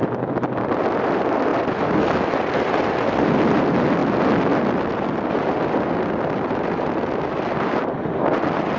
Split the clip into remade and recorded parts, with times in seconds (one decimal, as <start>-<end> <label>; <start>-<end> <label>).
0.0-8.8 recorded